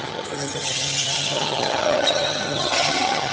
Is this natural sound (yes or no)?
no